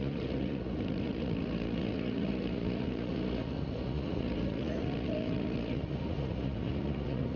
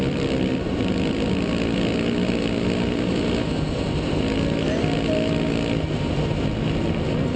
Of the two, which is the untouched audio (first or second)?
second